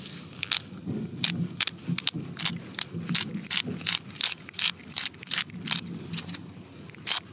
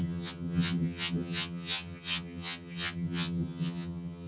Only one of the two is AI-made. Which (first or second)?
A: second